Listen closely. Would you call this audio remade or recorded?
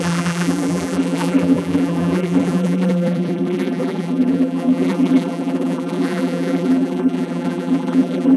remade